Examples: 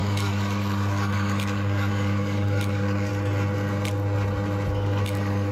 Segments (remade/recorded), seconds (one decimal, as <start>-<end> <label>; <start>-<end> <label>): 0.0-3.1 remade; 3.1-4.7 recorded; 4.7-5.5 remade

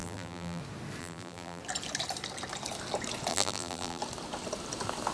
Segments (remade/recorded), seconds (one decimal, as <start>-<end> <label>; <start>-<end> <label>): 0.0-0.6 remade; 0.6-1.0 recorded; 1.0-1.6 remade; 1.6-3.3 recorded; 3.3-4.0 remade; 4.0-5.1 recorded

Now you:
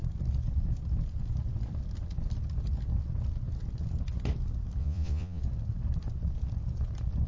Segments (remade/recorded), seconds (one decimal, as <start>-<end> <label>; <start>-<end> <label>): 0.0-4.8 recorded; 4.8-5.4 remade; 5.4-7.3 recorded

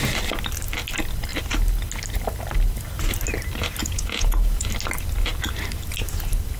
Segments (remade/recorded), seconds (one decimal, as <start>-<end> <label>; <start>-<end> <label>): 0.0-3.8 recorded; 3.8-4.7 remade; 4.7-6.6 recorded

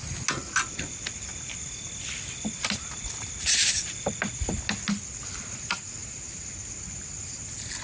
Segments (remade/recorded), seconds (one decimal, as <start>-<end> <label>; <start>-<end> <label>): 0.0-1.3 recorded; 1.3-3.1 remade; 3.1-6.0 recorded; 6.0-6.7 remade; 6.7-7.8 recorded

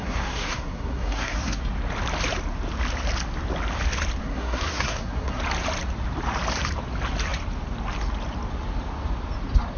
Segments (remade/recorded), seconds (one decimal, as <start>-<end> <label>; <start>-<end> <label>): 0.0-1.6 remade; 1.6-4.2 recorded; 4.2-5.4 remade; 5.4-9.8 recorded

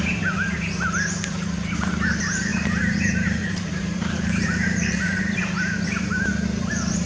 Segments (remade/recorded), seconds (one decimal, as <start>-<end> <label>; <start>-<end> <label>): 0.0-2.5 recorded; 2.5-5.2 remade; 5.2-7.1 recorded

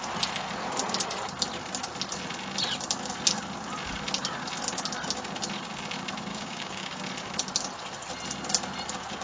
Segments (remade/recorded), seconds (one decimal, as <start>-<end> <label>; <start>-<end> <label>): 0.0-6.3 recorded; 6.3-7.0 remade; 7.0-9.2 recorded